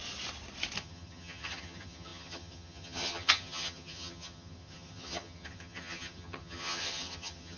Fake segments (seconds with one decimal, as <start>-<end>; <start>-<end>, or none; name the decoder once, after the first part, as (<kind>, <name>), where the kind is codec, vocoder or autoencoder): 0.8-7.6 (vocoder, HiFi-GAN)